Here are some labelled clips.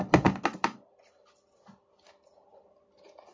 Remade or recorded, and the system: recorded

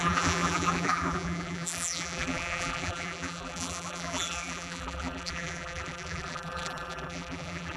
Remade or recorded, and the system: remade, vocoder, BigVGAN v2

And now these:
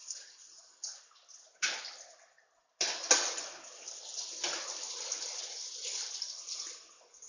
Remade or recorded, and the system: recorded